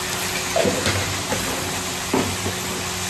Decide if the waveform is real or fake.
real